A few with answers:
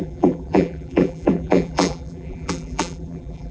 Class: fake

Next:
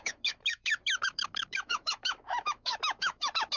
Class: fake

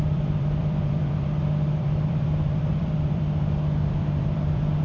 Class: fake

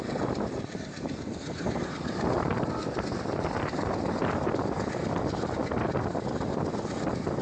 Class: real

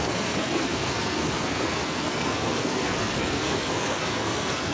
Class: fake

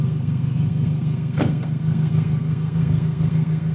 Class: fake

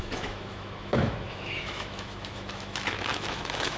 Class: fake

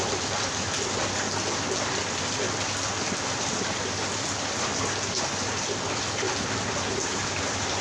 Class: real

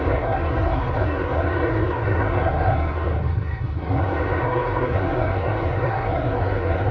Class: fake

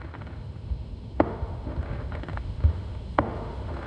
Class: fake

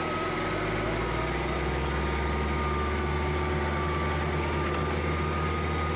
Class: real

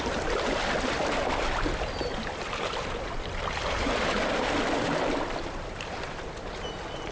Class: real